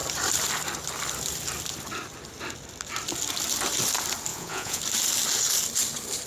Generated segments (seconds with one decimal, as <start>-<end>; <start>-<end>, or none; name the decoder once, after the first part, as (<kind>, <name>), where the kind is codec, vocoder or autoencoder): 4.3-4.8 (vocoder, Vocos)